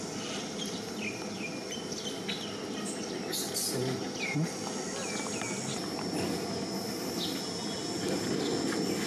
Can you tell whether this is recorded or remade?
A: recorded